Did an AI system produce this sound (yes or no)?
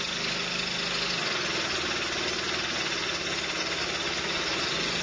no